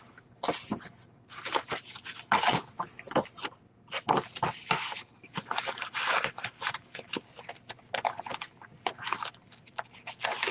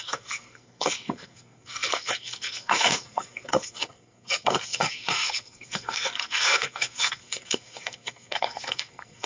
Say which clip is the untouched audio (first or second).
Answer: first